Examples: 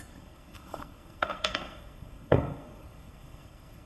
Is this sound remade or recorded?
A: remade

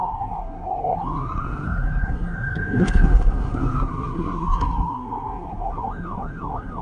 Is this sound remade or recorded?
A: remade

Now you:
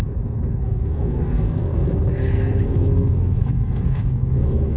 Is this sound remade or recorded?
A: remade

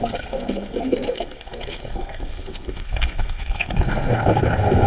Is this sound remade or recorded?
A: remade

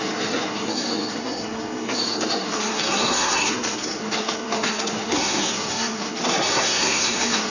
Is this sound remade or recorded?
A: remade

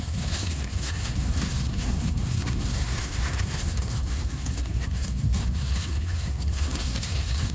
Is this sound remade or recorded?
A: remade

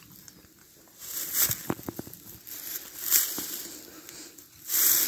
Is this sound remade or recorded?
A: recorded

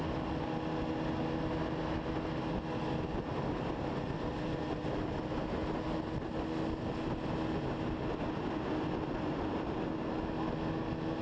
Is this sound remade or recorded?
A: recorded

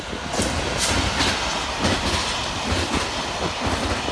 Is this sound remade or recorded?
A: recorded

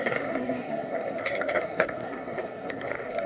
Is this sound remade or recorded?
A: remade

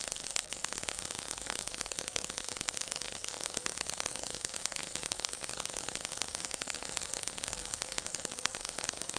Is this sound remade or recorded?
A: remade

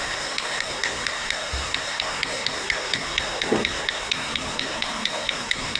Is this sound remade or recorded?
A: remade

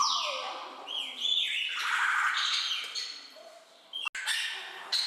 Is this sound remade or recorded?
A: recorded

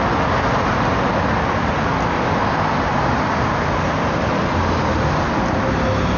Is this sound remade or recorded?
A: recorded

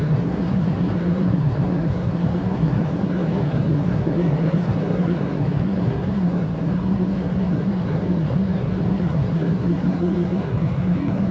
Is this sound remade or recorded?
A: remade